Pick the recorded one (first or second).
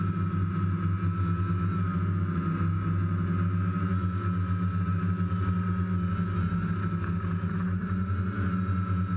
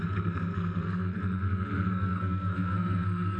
first